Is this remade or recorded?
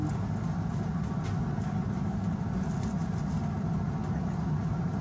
recorded